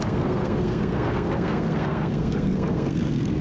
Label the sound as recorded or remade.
remade